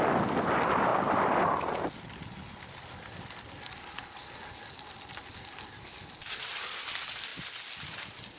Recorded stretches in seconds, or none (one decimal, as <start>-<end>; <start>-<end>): 0.0-8.4